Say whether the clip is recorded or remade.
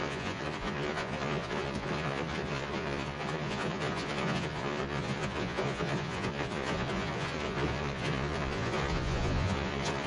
remade